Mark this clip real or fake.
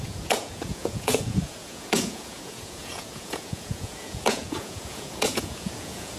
fake